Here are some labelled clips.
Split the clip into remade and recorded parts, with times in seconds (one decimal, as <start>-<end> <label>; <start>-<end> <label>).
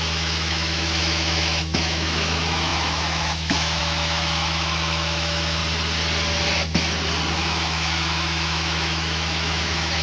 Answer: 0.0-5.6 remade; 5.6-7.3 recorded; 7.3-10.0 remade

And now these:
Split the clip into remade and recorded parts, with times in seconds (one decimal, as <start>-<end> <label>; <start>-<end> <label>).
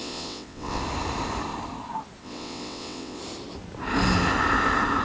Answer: 0.0-0.8 remade; 0.8-2.2 recorded; 2.2-3.2 remade; 3.2-5.0 recorded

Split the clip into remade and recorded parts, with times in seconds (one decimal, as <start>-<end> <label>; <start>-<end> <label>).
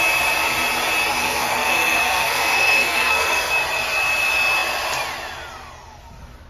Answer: 0.0-1.2 recorded; 1.2-3.5 remade; 3.5-6.5 recorded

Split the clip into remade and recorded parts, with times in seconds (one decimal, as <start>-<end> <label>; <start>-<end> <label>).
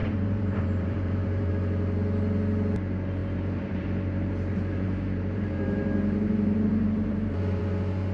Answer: 0.0-1.5 remade; 1.5-3.2 recorded; 3.2-7.6 remade; 7.6-8.1 recorded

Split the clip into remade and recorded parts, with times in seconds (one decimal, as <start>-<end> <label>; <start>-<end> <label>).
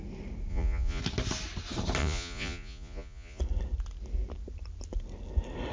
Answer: 0.0-0.5 recorded; 0.5-1.0 remade; 1.0-2.0 recorded; 2.0-3.4 remade; 3.4-5.7 recorded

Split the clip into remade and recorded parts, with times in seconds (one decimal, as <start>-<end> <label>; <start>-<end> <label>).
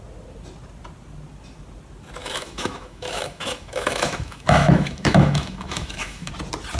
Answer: 0.0-2.2 recorded; 2.2-6.3 remade; 6.3-6.8 recorded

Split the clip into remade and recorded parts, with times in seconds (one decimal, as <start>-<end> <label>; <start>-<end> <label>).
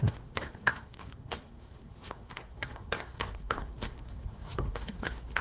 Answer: 0.0-5.4 remade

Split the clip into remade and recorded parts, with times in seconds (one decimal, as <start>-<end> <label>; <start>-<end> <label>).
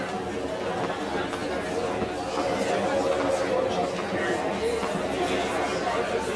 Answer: 0.0-6.4 recorded